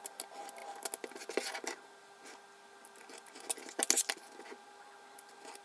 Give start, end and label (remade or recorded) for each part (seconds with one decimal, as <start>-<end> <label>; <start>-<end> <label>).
0.0-5.6 recorded